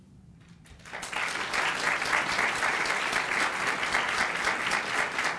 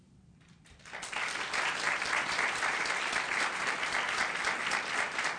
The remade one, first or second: second